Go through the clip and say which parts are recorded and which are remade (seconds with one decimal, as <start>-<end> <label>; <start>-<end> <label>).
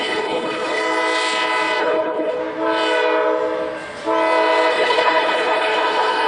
0.0-0.8 remade; 0.8-1.8 recorded; 1.8-2.4 remade; 2.4-4.7 recorded; 4.7-6.3 remade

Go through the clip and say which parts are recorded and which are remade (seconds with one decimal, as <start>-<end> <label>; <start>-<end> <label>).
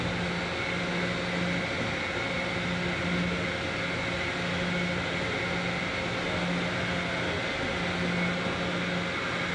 0.0-9.5 recorded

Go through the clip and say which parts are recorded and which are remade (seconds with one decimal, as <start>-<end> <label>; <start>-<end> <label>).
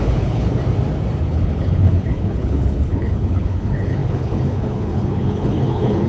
0.0-0.6 remade; 0.6-1.2 recorded; 1.2-6.1 remade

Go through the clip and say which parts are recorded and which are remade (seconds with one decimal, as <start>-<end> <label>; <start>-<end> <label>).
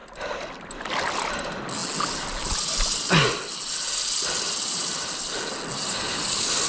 0.0-6.7 recorded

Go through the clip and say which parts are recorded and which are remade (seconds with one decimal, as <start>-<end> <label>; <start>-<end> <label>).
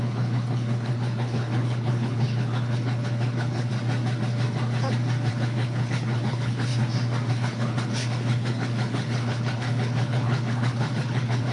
0.0-3.7 remade; 3.7-5.3 recorded; 5.3-6.7 remade; 6.7-7.3 recorded; 7.3-11.5 remade